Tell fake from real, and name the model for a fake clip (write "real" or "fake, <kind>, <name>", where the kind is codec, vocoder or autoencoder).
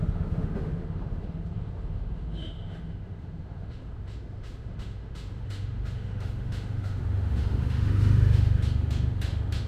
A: fake, autoencoder, DAC-VAE